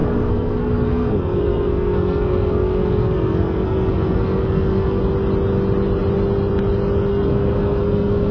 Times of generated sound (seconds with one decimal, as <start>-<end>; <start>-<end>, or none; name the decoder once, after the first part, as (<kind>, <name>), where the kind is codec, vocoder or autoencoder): 0.0-5.0 (codec, SNAC); 7.1-8.3